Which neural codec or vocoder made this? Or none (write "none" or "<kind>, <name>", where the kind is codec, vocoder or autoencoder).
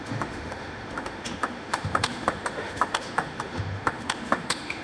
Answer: autoencoder, DAC-VAE